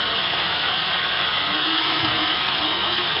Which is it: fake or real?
fake